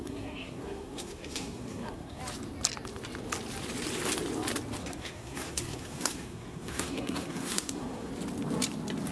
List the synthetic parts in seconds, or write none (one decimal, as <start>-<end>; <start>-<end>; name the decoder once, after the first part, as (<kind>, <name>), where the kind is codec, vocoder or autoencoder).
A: 0.0-2.2 (codec, SNAC); 4.8-8.1